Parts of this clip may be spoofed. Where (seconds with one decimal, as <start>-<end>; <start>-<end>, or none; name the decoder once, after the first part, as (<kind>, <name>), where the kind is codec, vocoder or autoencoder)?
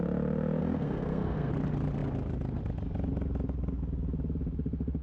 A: 0.6-1.5 (codec, SNAC)